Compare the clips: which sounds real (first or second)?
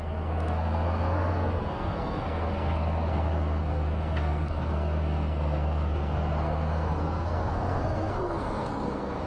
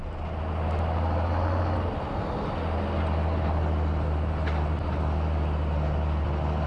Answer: second